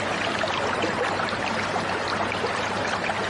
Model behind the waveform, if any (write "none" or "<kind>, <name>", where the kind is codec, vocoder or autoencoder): none